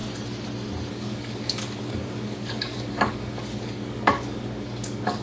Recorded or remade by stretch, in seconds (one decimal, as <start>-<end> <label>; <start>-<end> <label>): 0.0-0.9 recorded; 0.9-5.2 remade